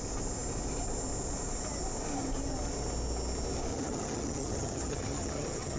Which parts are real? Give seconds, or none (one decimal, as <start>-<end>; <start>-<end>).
0.0-3.7